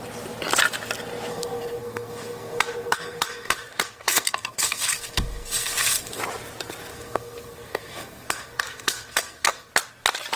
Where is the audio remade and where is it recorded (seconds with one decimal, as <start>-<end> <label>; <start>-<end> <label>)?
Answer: 0.0-1.3 recorded; 1.3-6.2 remade; 6.2-6.9 recorded; 6.9-9.7 remade; 9.7-10.4 recorded